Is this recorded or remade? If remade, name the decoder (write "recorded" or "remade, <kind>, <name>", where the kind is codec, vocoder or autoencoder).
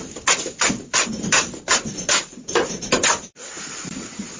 recorded